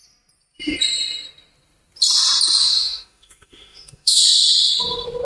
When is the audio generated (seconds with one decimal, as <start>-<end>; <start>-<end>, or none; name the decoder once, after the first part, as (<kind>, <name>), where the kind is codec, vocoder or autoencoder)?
2.6-4.2 (autoencoder, DAC-VAE)